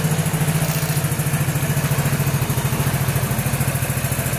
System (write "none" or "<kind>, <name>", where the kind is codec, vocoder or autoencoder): none